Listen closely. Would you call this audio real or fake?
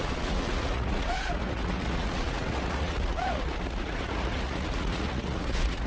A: fake